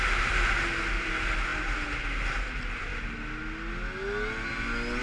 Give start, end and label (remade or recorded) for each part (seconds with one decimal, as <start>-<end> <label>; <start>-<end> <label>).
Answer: 0.0-5.0 recorded